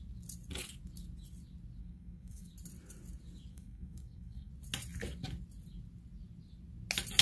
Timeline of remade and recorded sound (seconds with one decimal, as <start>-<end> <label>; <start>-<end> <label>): 0.0-1.8 recorded; 1.8-2.5 remade; 2.5-3.5 recorded; 3.5-4.5 remade; 4.5-7.2 recorded